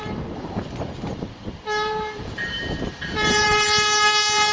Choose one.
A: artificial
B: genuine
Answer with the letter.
A